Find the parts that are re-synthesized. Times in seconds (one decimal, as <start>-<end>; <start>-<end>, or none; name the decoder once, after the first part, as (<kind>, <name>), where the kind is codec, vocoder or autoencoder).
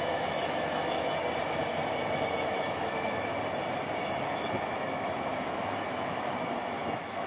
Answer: 0.0-1.2 (autoencoder, DAC-VAE); 1.9-3.3; 4.0-7.3